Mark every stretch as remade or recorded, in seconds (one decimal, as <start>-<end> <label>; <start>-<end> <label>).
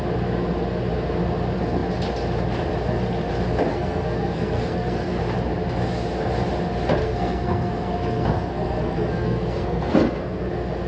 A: 0.0-3.7 recorded; 3.7-5.2 remade; 5.2-7.0 recorded; 7.0-10.5 remade; 10.5-10.9 recorded